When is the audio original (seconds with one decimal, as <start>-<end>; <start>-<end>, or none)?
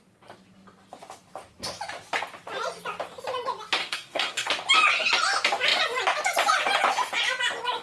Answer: 0.0-3.8; 4.5-7.8